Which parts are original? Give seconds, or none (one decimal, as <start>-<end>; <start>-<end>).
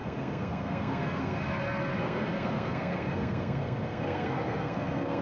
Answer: 1.4-1.9